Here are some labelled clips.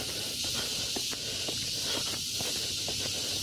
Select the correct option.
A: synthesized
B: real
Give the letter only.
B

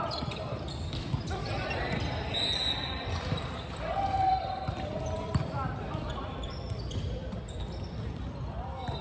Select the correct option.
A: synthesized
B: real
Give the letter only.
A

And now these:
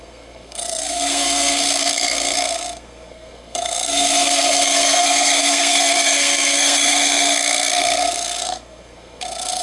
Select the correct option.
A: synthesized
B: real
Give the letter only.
A